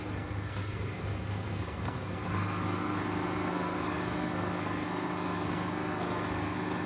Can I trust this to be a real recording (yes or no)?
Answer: no